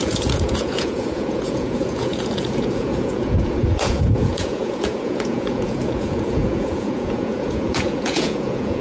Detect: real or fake fake